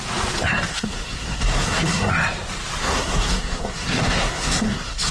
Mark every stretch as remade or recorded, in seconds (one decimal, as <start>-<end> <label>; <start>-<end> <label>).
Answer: 0.0-0.7 recorded; 0.7-2.1 remade; 2.1-2.8 recorded; 2.8-5.1 remade